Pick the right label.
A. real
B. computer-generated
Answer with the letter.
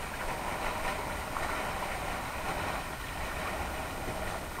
A